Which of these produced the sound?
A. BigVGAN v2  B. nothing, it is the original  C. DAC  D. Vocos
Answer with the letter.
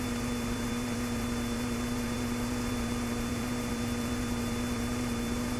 A